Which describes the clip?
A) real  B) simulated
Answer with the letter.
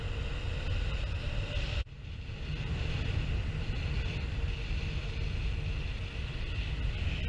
A